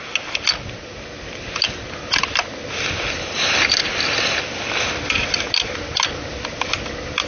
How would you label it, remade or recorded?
recorded